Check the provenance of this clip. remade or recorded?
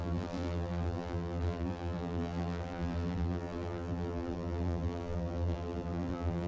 remade